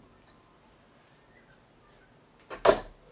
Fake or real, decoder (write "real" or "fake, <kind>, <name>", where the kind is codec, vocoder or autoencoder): real